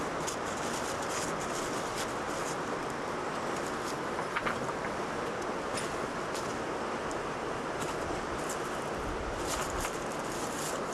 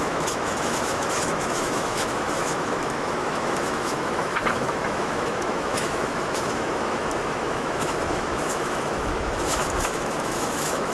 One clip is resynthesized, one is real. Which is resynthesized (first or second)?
second